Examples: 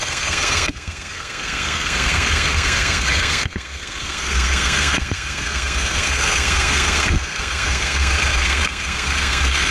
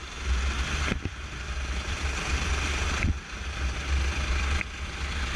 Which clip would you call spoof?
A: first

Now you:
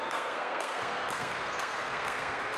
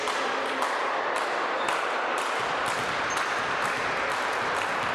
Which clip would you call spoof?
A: first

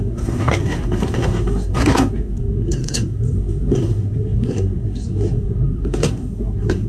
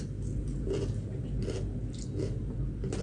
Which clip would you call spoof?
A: first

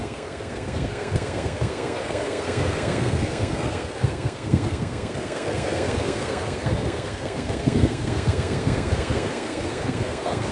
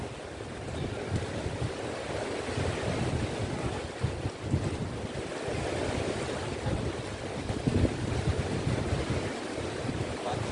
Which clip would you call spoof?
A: first